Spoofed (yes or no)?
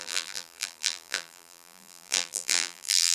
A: yes